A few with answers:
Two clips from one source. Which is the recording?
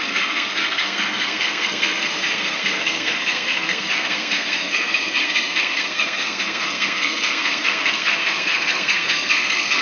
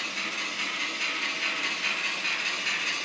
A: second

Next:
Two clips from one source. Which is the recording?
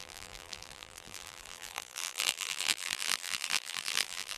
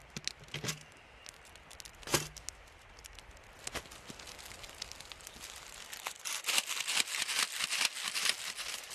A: second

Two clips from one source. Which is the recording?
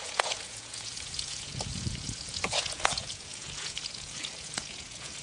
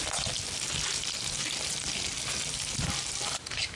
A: second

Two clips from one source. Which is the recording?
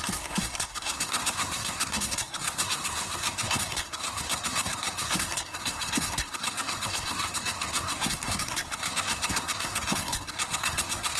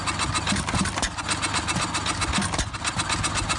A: second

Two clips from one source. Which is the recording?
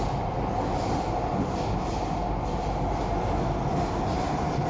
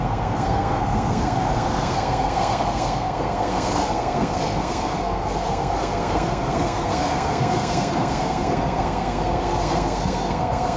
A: first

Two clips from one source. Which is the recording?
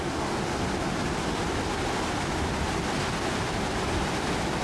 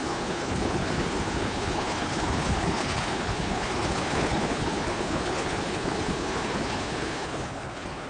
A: first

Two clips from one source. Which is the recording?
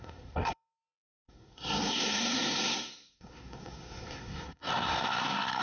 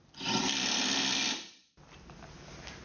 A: second